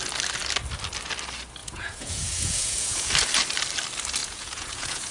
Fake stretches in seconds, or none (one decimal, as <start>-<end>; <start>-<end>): 1.6-3.1; 4.2-5.1